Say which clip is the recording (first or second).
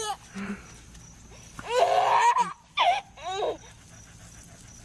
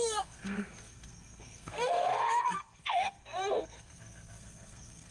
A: first